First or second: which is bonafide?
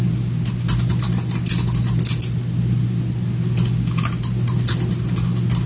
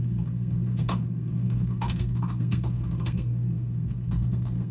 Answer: first